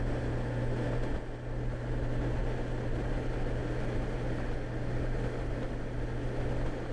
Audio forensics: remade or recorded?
recorded